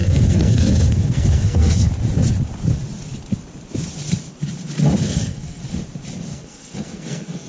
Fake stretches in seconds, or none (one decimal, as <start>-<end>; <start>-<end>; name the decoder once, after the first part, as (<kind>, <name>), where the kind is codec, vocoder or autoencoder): 0.0-1.9 (codec, SNAC); 5.0-5.6; 6.3-7.5